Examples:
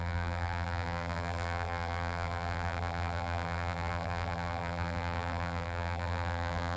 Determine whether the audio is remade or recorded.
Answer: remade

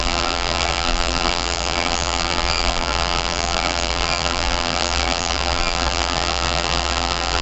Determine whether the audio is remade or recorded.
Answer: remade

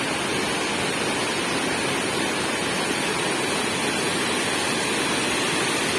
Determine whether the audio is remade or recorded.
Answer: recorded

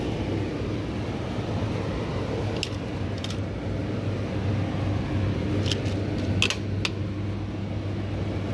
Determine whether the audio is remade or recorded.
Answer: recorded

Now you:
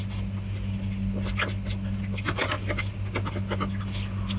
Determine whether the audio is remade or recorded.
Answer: recorded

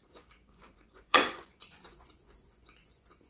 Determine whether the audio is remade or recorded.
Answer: remade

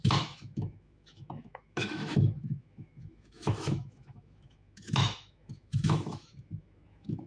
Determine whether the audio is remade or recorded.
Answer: remade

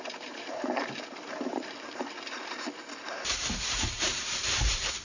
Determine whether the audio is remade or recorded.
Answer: remade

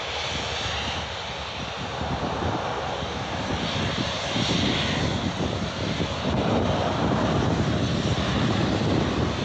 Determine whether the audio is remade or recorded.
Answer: recorded